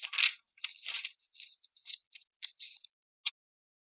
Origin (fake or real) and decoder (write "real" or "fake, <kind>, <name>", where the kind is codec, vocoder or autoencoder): real